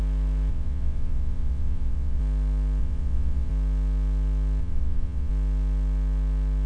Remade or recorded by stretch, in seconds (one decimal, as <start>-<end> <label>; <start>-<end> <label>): 0.0-0.5 recorded; 0.5-2.2 remade; 2.2-2.8 recorded; 2.8-3.5 remade; 3.5-4.6 recorded; 4.6-5.3 remade; 5.3-6.7 recorded